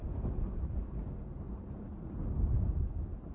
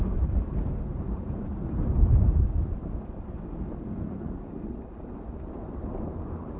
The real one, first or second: first